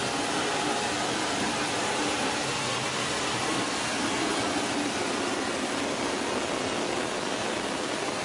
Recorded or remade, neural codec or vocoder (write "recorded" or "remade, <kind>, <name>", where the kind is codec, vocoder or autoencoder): recorded